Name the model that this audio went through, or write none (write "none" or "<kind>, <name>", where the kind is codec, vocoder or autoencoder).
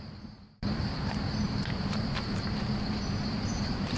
vocoder, BigVGAN v2